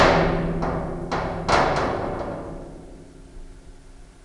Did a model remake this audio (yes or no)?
no